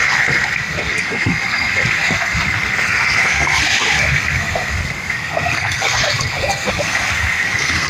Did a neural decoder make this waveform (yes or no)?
yes